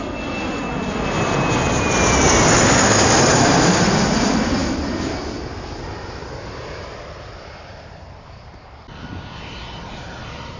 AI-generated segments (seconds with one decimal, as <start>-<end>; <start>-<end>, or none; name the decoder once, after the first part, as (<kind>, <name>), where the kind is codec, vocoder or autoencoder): none